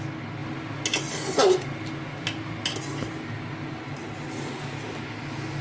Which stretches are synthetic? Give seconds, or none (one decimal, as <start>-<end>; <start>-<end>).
none